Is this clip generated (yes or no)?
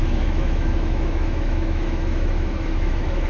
yes